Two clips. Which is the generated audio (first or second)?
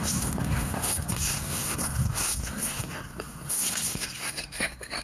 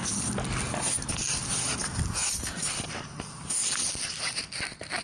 first